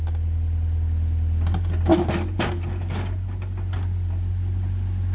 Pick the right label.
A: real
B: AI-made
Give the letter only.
A